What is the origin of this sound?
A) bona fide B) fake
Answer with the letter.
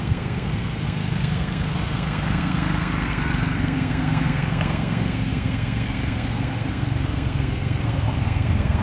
B